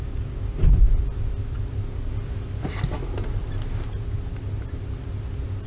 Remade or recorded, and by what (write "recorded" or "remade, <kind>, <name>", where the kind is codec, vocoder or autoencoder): recorded